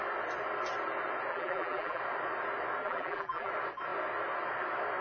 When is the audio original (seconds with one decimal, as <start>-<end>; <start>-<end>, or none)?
0.0-1.3; 2.0-2.8; 3.5-5.0